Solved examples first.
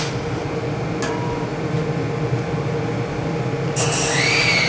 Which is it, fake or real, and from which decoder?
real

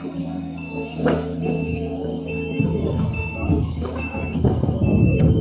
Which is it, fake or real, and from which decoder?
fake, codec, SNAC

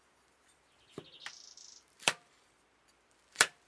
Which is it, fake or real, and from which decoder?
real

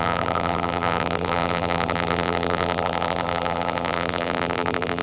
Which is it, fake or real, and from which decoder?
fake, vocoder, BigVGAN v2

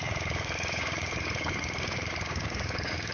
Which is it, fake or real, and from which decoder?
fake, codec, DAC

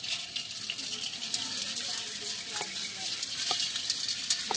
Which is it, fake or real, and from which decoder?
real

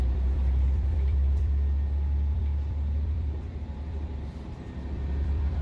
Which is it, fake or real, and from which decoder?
fake, vocoder, BigVGAN v2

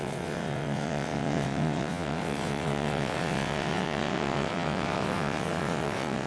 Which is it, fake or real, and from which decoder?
fake, vocoder, WaveNeXt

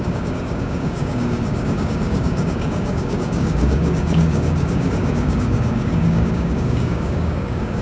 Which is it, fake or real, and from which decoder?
fake, codec, DAC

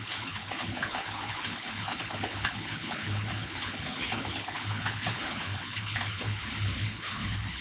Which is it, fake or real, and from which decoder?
fake, codec, HILCodec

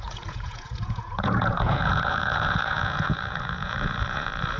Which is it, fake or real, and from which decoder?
fake, vocoder, Vocos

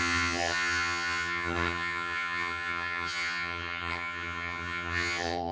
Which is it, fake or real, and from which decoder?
fake, vocoder, HiFi-GAN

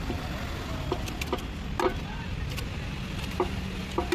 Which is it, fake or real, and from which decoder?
real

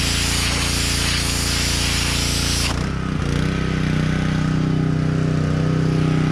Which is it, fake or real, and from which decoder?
real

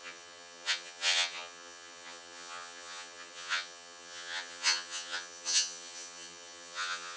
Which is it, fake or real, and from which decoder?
fake, vocoder, HiFi-GAN